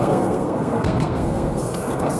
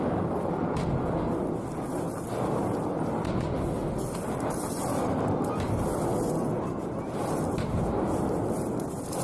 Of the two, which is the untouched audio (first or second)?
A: second